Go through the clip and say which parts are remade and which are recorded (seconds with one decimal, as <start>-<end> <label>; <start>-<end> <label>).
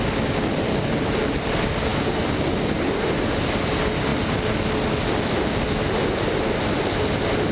0.0-7.5 recorded